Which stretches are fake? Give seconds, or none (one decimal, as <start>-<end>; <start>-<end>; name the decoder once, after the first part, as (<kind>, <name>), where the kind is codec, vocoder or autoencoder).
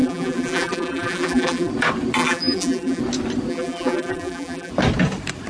0.0-1.7 (vocoder, BigVGAN v2); 2.2-3.0; 3.5-4.7